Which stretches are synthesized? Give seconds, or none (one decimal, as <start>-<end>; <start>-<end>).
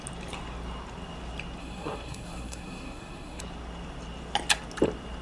1.6-3.4